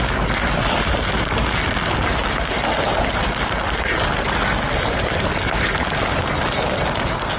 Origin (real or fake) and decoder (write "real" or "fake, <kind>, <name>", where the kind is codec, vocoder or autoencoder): real